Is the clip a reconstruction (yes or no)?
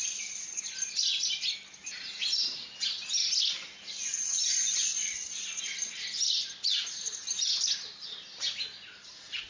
no